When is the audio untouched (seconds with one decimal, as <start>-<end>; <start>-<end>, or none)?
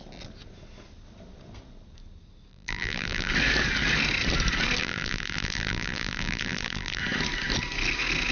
0.0-2.5; 3.3-4.8; 7.0-8.3